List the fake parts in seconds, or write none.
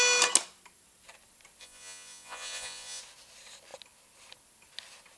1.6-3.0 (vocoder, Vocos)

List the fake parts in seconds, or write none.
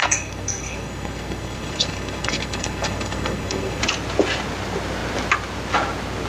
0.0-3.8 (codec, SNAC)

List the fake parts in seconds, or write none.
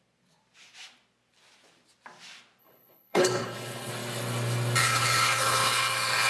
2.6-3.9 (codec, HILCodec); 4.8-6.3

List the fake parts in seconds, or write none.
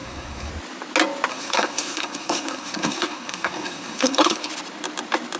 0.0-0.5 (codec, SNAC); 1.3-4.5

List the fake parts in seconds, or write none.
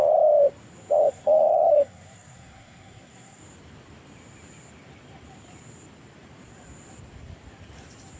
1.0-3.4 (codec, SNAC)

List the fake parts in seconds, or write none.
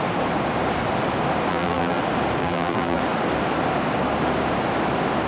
1.5-2.0 (vocoder, BigVGAN v2); 2.4-3.0